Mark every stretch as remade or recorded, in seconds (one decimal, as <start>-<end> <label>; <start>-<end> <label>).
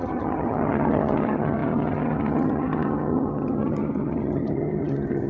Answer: 0.0-5.3 remade